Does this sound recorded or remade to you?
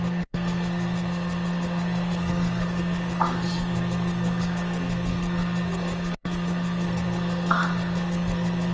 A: remade